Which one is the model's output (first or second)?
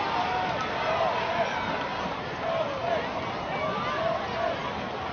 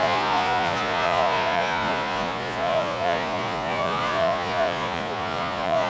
second